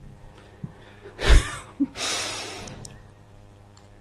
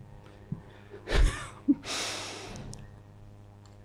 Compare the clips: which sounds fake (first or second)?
first